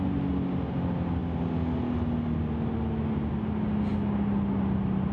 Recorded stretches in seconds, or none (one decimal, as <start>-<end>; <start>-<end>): 0.0-5.1